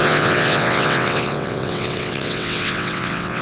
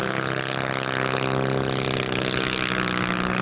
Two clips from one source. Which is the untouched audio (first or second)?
second